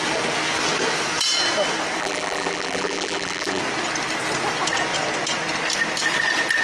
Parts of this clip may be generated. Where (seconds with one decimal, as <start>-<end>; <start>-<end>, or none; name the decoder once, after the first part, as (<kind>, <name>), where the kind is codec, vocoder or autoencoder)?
2.0-3.6 (vocoder, BigVGAN v2)